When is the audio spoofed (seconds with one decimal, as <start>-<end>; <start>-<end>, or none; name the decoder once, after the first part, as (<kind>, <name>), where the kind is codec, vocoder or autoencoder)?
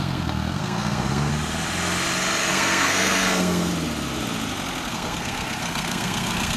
0.0-1.3 (codec, SNAC); 2.5-3.7; 4.9-6.6